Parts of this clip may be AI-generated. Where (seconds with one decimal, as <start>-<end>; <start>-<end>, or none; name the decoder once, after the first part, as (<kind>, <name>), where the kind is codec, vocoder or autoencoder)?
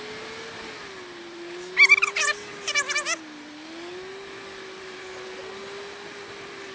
none